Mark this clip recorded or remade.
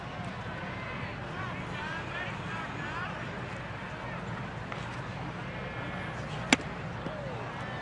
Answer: recorded